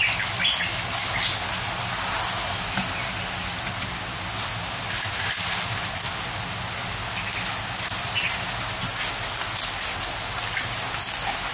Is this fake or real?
real